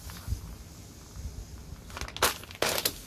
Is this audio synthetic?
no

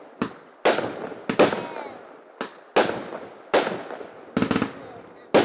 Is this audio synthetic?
no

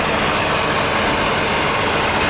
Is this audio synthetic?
no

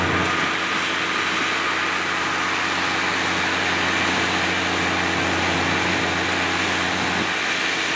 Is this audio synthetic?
no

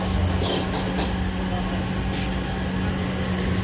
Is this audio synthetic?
no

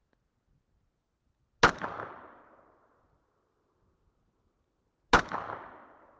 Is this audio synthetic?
no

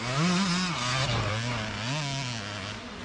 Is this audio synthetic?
no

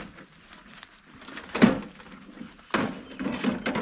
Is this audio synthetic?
no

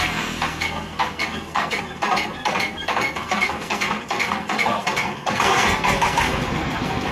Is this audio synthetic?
yes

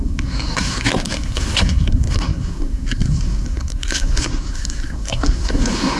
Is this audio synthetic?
yes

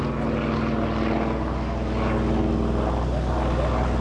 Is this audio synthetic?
no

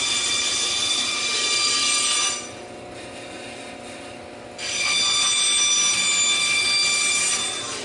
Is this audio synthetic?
no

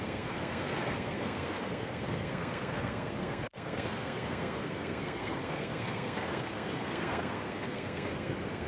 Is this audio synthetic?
yes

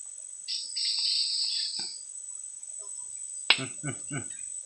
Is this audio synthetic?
no